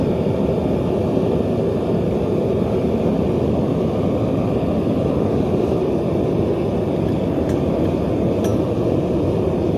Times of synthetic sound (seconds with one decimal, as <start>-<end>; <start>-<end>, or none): none